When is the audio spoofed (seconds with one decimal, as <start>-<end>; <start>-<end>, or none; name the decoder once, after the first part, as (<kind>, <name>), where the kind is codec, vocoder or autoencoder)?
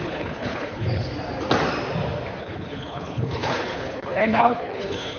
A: 0.0-1.1 (codec, HILCodec); 2.4-5.2